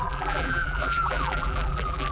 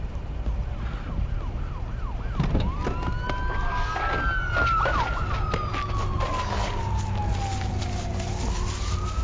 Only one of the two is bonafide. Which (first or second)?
second